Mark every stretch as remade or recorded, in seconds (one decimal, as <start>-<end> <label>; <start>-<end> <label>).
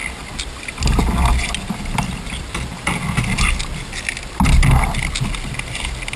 0.0-6.2 recorded